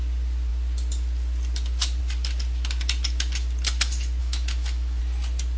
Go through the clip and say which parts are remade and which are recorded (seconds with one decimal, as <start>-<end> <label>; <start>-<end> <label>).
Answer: 0.0-4.2 recorded; 4.2-5.0 remade; 5.0-5.6 recorded